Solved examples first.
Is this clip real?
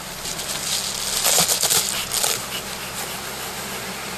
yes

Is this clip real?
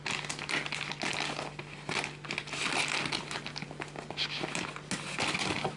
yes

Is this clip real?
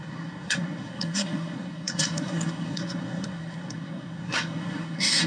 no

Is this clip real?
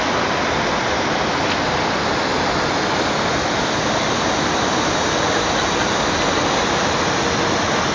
yes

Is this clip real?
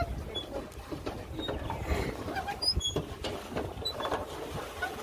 yes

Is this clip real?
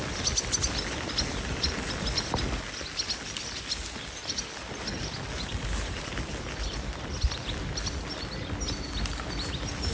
yes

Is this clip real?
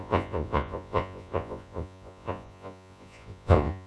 no